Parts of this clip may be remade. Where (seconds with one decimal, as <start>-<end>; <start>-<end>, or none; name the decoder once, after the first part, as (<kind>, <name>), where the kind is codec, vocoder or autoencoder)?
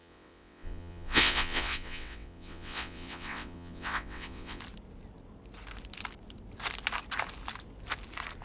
0.0-4.6 (vocoder, WaveNeXt)